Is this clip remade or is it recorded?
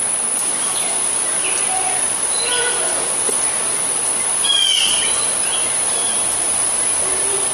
recorded